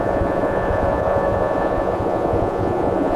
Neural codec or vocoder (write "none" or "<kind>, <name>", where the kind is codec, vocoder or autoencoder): vocoder, Vocos